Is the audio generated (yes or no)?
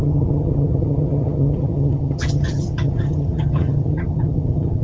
yes